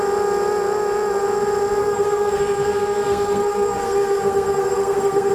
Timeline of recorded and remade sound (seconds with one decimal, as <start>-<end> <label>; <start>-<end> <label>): 0.0-1.8 recorded; 1.8-5.3 remade